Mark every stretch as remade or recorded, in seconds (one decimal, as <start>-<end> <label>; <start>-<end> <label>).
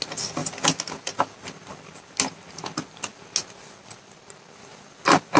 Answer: 0.0-5.4 recorded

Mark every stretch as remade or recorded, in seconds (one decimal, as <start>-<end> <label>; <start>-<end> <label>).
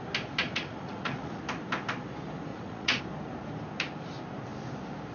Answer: 0.0-0.4 recorded; 0.4-1.4 remade; 1.4-2.5 recorded; 2.5-3.0 remade; 3.0-5.1 recorded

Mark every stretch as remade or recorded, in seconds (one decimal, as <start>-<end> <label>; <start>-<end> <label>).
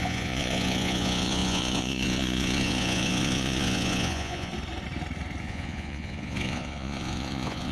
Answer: 0.0-4.5 remade; 4.5-5.4 recorded; 5.4-7.7 remade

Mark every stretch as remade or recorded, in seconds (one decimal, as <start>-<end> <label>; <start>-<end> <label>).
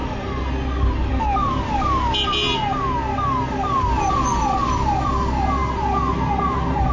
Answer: 0.0-6.9 recorded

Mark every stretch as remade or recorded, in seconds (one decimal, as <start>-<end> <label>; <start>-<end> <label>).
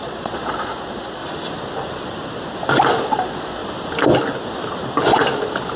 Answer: 0.0-1.2 remade; 1.2-3.0 recorded; 3.0-3.6 remade; 3.6-5.8 recorded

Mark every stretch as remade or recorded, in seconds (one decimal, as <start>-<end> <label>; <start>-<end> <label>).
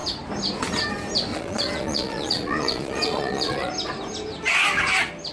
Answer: 0.0-1.3 recorded; 1.3-3.7 remade; 3.7-5.3 recorded